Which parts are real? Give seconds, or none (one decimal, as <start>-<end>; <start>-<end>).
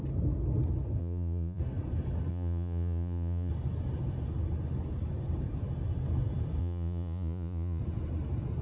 0.0-1.0; 1.6-2.3; 3.5-6.6; 7.8-8.6